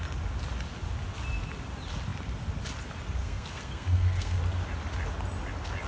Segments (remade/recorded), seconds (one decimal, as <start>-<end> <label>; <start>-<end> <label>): 0.0-3.2 recorded; 3.2-4.4 remade; 4.4-5.9 recorded